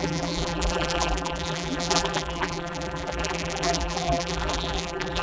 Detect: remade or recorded remade